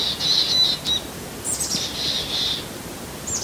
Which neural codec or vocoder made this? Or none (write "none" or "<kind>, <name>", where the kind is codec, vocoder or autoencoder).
none